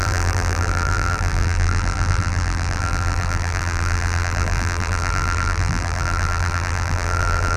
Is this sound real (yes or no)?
no